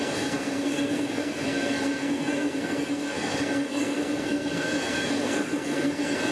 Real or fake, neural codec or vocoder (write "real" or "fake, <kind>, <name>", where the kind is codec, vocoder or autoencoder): fake, codec, SNAC